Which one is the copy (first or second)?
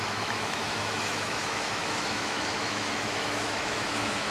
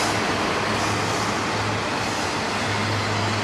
first